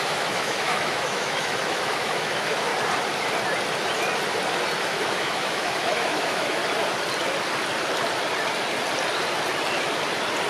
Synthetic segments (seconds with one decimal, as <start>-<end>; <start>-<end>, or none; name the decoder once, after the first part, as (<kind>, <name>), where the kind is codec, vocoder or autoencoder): 0.0-2.7 (autoencoder, DAC-VAE); 4.8-6.6